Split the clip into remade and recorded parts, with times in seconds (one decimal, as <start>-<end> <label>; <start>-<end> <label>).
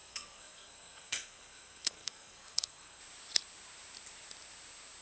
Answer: 0.0-3.0 remade; 3.0-5.0 recorded